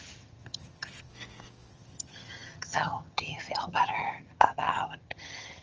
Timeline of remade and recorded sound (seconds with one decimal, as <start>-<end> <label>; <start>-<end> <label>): 0.0-1.1 remade; 1.1-1.7 recorded; 1.7-5.6 remade